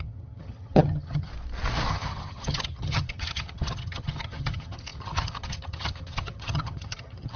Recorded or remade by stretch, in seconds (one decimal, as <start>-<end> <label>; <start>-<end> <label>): 0.0-1.3 remade; 1.3-1.9 recorded; 1.9-7.4 remade